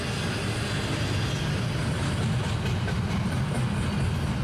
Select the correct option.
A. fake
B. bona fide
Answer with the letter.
B